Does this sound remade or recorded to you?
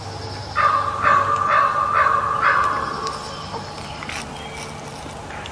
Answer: recorded